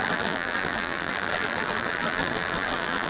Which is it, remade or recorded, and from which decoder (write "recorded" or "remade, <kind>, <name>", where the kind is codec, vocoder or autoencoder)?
remade, vocoder, BigVGAN v2